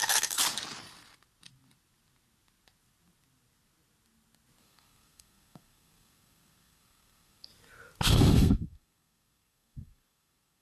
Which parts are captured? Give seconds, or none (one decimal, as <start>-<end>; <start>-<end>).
0.4-4.6; 7.5-8.1